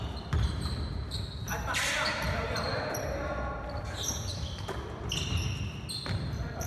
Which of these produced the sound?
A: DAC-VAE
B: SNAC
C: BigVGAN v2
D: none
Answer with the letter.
D